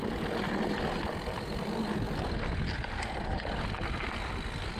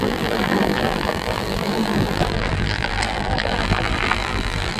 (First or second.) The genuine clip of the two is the first